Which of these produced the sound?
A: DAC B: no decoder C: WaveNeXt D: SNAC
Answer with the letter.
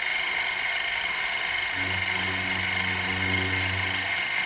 B